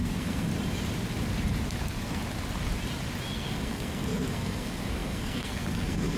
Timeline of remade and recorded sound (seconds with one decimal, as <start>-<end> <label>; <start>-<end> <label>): 0.0-0.5 remade; 0.5-1.8 recorded; 1.8-2.2 remade; 2.2-3.3 recorded; 3.3-6.2 remade